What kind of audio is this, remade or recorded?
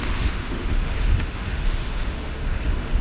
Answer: remade